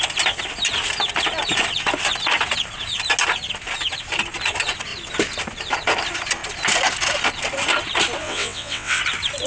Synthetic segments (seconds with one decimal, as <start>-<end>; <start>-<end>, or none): 8.2-9.0